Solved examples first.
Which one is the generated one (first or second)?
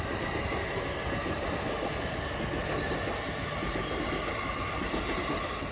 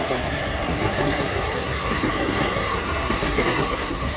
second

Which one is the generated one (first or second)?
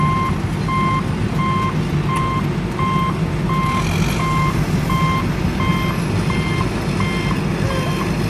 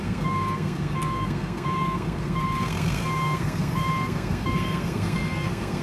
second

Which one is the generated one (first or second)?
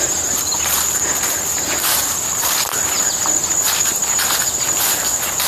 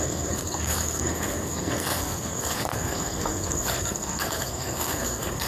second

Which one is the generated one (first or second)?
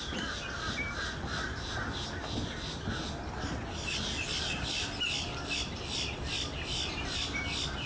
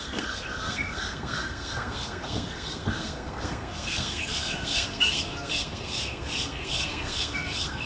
second